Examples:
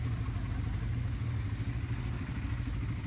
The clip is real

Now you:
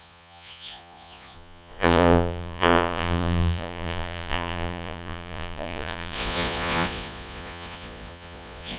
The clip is fake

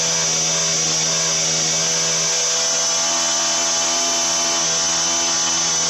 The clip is real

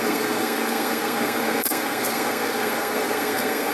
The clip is fake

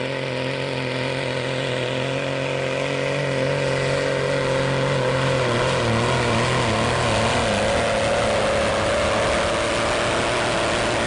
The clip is real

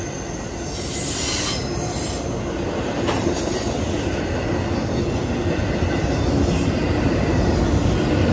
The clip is real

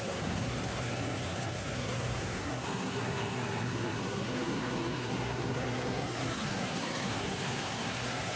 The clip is fake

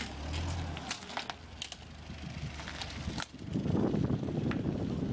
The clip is real